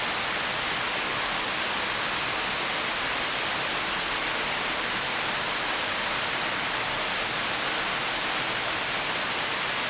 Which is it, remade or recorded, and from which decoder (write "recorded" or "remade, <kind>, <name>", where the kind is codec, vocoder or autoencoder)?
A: recorded